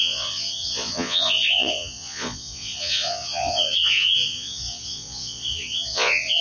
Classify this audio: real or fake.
fake